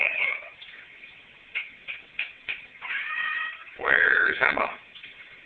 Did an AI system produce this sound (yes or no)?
yes